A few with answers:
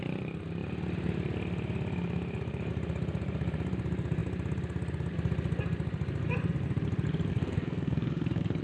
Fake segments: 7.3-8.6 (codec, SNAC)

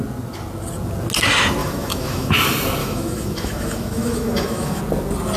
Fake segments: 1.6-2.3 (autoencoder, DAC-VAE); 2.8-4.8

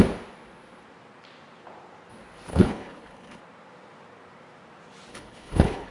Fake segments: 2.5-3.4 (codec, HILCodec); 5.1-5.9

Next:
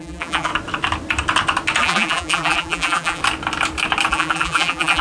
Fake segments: 0.0-0.5 (vocoder, BigVGAN v2); 1.8-3.2; 4.1-5.0